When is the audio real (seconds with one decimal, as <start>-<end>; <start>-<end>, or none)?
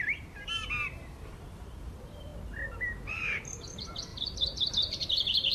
2.3-3.1